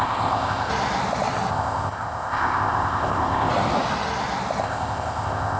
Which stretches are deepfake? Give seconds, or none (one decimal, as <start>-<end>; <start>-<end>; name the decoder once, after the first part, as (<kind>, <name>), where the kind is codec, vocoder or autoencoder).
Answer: 0.0-0.7 (codec, ZipCodec); 1.5-3.5; 4.6-5.6

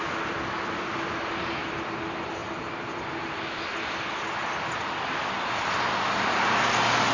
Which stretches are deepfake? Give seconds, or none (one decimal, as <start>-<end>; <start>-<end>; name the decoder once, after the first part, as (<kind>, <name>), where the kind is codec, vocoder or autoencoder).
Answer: none